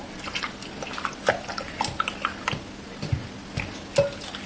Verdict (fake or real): real